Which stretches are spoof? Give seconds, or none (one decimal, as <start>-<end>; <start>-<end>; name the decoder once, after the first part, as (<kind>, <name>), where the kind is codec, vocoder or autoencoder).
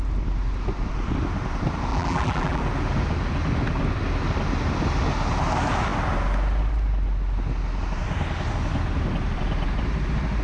1.9-2.6 (vocoder, BigVGAN v2)